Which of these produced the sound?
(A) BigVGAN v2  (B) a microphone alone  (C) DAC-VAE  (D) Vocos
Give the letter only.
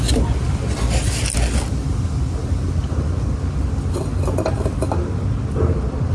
B